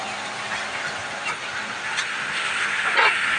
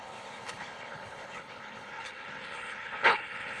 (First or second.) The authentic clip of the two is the first